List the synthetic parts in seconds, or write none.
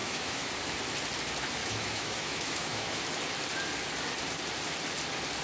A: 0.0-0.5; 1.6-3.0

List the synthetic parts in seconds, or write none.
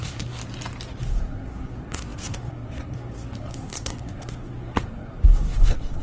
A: 0.0-0.4; 1.0-6.0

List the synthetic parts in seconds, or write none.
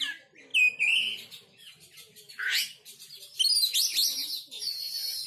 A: none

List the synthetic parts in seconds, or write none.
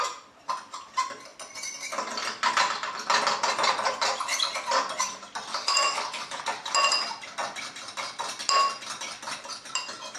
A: 5.5-6.4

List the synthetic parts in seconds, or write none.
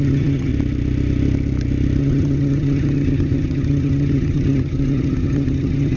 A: 0.0-0.5; 2.0-6.0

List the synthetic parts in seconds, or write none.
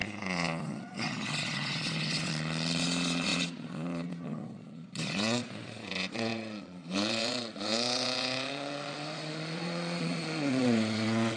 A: 0.0-2.3; 2.8-11.4